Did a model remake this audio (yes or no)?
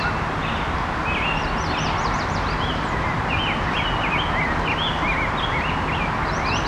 no